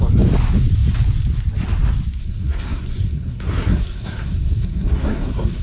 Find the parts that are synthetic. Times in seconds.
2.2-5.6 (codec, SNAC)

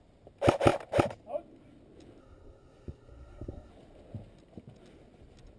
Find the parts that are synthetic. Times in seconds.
2.2-3.7 (codec, SNAC)

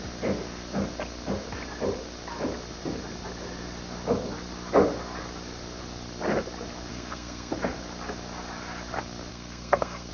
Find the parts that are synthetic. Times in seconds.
6.9-7.5 (codec, SNAC); 9.3-10.1

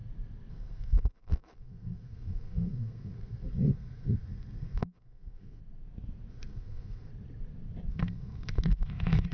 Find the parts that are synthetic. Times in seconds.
0.5-5.6 (codec, SNAC); 6.3-7.1; 7.9-9.3

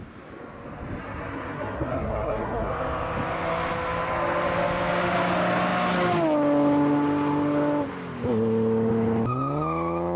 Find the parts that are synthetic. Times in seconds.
1.0-2.7 (codec, SNAC)